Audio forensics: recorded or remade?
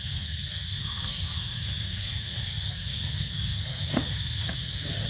remade